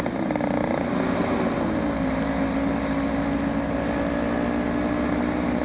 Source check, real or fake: real